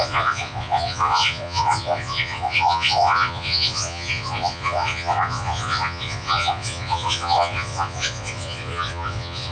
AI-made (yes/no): yes